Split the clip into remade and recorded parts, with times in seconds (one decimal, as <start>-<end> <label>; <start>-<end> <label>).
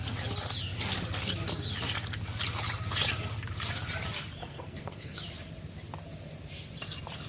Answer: 0.0-4.4 recorded; 4.4-5.2 remade; 5.2-7.3 recorded